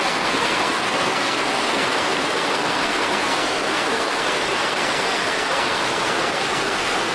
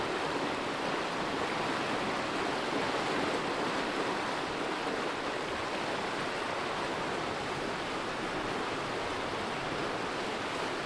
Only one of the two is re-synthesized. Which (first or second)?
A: first